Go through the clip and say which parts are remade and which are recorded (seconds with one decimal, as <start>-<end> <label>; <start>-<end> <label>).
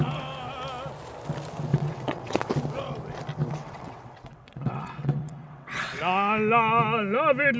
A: 0.0-1.7 recorded; 1.7-2.5 remade; 2.5-3.5 recorded; 3.5-6.0 remade; 6.0-7.6 recorded